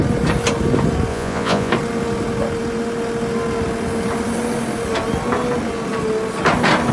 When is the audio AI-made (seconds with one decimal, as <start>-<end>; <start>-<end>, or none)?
1.1-1.7